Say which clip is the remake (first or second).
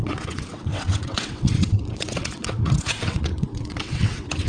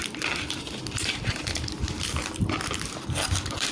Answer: first